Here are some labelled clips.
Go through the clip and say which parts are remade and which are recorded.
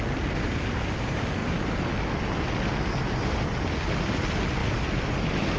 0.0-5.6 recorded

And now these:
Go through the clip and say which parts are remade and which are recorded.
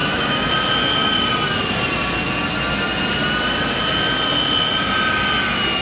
0.0-0.5 remade; 0.5-5.8 recorded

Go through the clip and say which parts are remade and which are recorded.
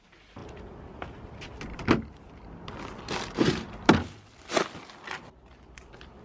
0.0-6.2 recorded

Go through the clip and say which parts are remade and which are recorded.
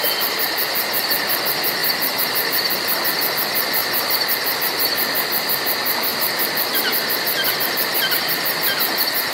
0.0-9.3 recorded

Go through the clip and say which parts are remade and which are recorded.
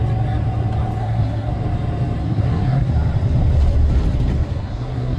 0.0-1.0 recorded; 1.0-1.5 remade; 1.5-2.2 recorded; 2.2-2.9 remade; 2.9-4.5 recorded; 4.5-5.2 remade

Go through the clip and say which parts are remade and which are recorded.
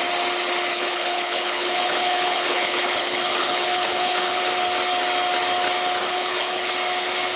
0.0-0.7 recorded; 0.7-4.4 remade; 4.4-6.0 recorded; 6.0-6.7 remade; 6.7-7.4 recorded